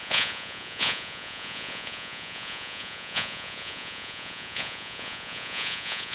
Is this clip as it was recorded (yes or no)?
no